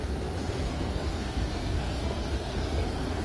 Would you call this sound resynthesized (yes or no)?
yes